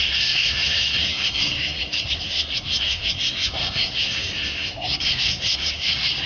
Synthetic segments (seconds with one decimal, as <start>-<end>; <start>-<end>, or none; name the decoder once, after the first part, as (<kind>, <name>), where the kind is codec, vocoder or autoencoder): 0.0-6.3 (codec, SNAC)